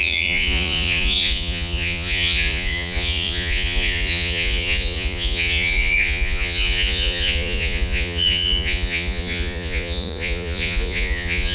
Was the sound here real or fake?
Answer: fake